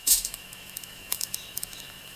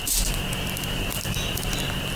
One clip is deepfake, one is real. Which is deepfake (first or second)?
first